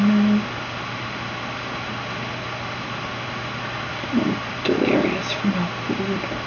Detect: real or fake real